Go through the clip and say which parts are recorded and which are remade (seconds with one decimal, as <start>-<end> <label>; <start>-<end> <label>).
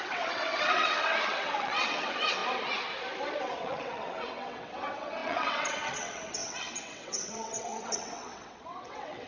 0.0-2.4 remade; 2.4-3.4 recorded; 3.4-9.3 remade